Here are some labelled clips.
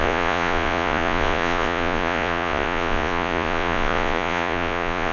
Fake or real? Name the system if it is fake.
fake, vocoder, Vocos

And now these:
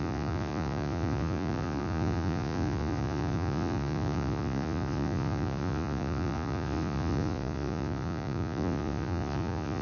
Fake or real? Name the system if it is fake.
fake, vocoder, Vocos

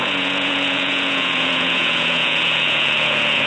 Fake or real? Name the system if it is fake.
fake, vocoder, Vocos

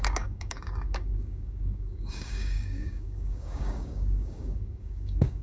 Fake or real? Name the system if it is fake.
fake, codec, DAC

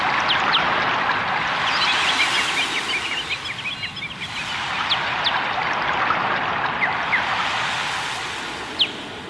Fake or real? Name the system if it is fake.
real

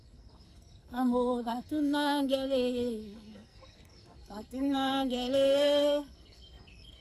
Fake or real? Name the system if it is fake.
fake, codec, SNAC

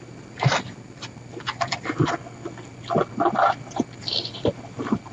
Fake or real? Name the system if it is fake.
real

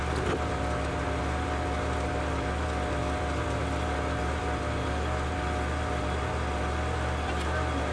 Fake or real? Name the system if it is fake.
real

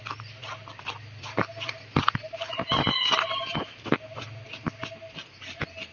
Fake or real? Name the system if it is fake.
real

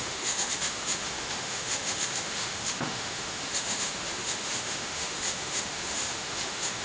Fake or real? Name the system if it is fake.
fake, autoencoder, DAC-VAE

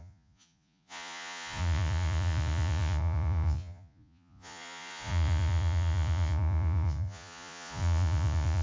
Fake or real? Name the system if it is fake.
fake, vocoder, Vocos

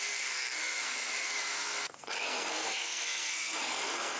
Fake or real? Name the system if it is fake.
fake, codec, SNAC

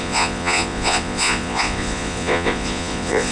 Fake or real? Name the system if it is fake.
fake, vocoder, Vocos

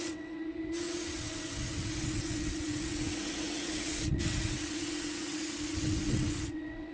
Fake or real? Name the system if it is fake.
fake, vocoder, WaveNeXt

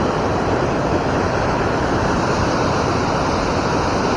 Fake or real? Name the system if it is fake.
real